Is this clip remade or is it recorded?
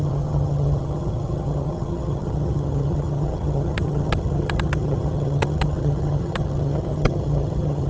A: remade